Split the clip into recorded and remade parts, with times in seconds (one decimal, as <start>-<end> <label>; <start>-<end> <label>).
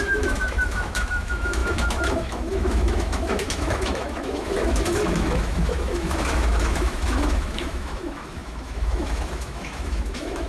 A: 0.0-10.5 remade